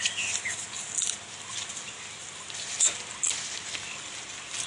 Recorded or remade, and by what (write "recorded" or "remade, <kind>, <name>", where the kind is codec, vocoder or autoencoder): recorded